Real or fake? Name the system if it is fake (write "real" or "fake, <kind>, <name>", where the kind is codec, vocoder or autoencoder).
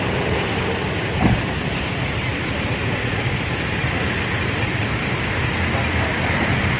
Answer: real